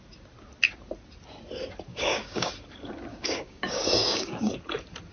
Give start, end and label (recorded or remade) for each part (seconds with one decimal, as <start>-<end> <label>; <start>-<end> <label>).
0.0-1.9 recorded; 1.9-2.5 remade; 2.5-3.1 recorded; 3.1-4.5 remade; 4.5-5.1 recorded